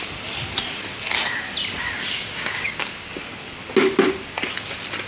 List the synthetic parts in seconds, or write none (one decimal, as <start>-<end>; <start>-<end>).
2.0-3.2

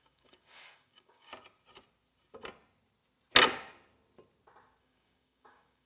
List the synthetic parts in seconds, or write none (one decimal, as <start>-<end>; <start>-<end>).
0.0-1.3; 4.8-5.9

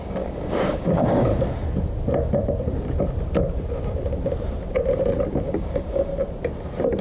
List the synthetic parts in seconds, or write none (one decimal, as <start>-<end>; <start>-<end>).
0.0-1.3; 5.5-6.1

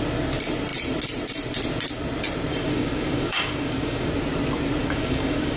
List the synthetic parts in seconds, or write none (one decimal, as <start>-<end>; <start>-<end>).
2.5-4.1; 4.8-5.6

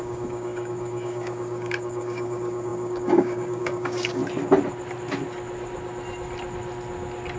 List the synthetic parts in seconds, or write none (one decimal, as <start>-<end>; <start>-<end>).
0.0-4.2

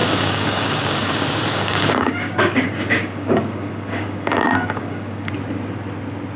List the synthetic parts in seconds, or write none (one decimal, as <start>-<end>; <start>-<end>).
0.0-1.1; 1.5-5.3